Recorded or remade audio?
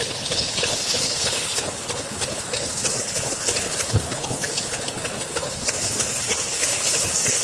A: remade